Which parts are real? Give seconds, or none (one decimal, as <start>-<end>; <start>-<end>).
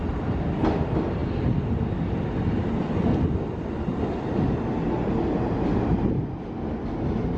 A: 0.0-7.4